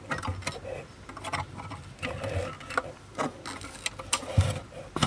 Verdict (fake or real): real